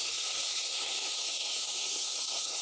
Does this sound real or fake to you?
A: fake